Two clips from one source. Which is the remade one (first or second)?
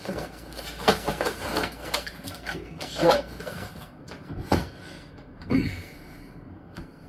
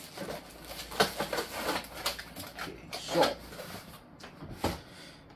first